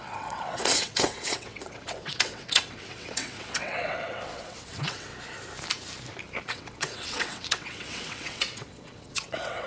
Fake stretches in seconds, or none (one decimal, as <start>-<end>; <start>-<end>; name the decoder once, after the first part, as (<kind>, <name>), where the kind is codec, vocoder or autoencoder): 0.0-5.1 (vocoder, WaveNeXt); 6.4-9.7